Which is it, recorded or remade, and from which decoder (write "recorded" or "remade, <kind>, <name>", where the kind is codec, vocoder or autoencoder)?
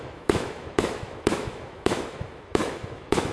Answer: remade, autoencoder, DAC-VAE